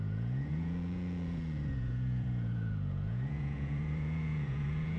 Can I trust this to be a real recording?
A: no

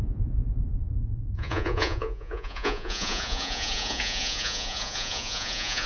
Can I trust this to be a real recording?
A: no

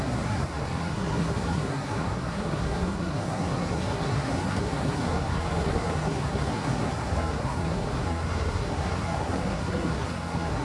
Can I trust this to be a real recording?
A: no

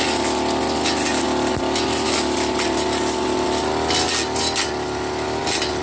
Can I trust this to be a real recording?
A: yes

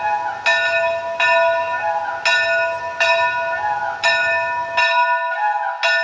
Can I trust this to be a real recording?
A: yes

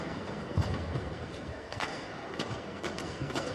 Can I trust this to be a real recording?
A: no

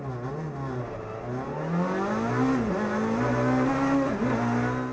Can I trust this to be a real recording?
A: yes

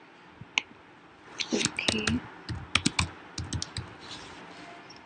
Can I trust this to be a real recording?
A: yes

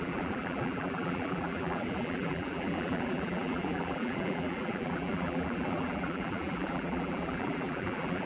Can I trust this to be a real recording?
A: no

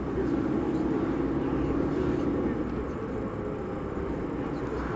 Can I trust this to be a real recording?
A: yes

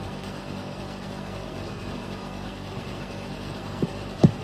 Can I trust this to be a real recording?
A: no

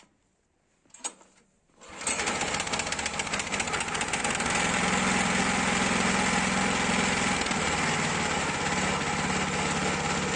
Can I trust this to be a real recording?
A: yes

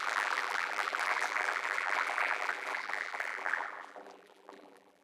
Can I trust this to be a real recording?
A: no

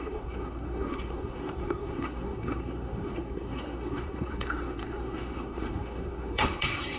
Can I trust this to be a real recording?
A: no